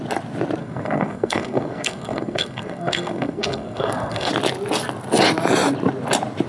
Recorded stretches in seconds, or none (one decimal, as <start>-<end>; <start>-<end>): 0.0-0.6; 4.3-6.5